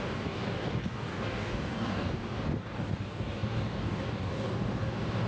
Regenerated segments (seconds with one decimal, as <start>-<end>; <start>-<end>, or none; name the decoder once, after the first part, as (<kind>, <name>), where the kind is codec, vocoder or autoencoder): 0.0-5.3 (codec, DAC)